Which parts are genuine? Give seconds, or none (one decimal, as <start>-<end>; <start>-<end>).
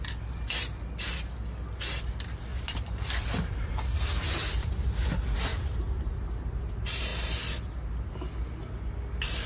0.0-2.5; 4.7-5.5; 6.1-9.5